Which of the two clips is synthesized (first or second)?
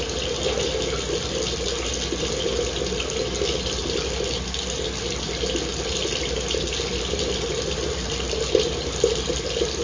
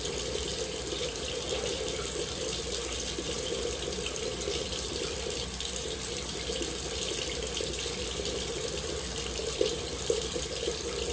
second